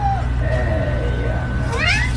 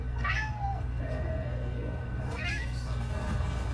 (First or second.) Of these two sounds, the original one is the first